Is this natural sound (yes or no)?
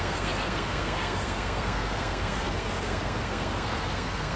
no